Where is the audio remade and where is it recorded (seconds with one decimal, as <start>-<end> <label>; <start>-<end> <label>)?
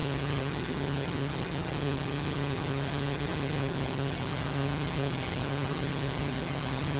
0.0-7.0 remade